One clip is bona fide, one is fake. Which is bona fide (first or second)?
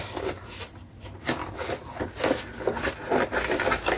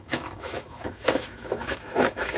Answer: first